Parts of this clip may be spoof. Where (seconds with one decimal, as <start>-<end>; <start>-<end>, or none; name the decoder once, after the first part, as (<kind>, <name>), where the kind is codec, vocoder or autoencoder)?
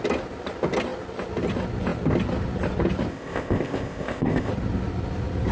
3.1-4.5 (codec, ZipCodec)